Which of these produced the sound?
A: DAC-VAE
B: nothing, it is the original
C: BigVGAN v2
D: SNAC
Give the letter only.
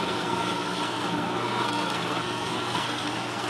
D